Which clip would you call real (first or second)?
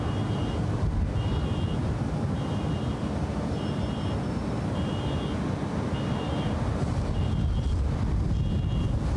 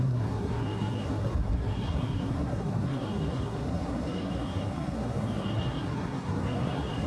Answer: first